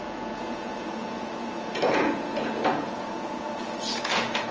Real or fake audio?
fake